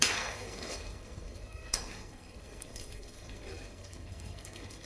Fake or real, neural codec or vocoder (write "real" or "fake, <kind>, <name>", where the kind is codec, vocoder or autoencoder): fake, codec, SNAC